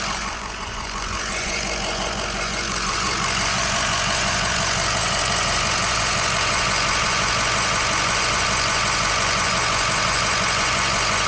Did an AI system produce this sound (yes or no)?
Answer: yes